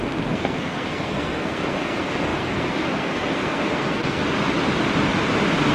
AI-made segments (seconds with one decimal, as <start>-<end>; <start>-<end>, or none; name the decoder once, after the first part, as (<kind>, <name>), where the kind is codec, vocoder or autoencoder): 0.0-4.2 (codec, SNAC)